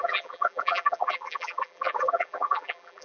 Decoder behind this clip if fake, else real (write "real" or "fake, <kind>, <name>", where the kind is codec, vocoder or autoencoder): fake, vocoder, BigVGAN v2